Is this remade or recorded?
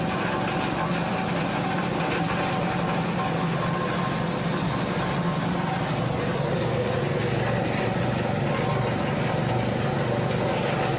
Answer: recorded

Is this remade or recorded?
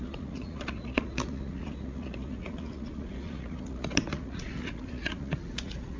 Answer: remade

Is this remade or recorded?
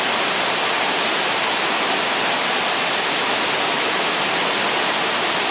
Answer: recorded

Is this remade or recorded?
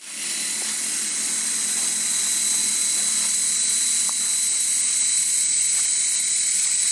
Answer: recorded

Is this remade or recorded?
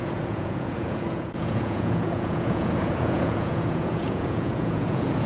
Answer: remade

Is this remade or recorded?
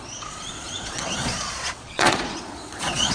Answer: remade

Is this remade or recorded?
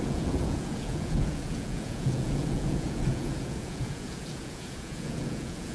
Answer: remade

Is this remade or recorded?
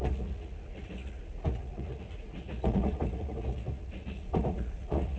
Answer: remade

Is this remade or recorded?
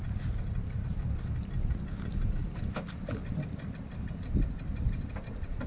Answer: recorded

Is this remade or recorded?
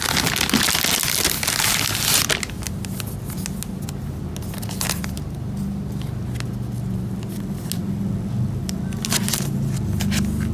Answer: recorded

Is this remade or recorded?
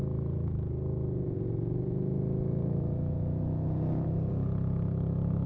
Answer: remade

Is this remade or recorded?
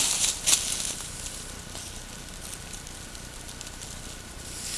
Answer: recorded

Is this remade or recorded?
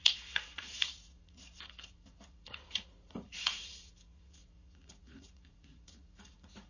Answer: remade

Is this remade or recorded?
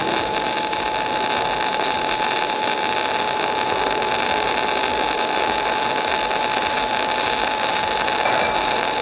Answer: recorded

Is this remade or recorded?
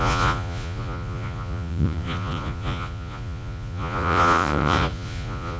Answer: remade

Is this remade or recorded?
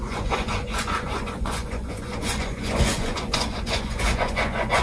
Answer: remade